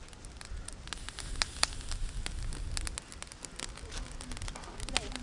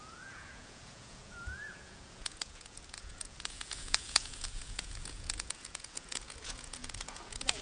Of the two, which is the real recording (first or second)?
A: first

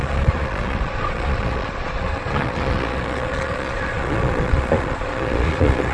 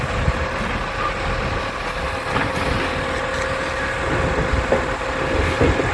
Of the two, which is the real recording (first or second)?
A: second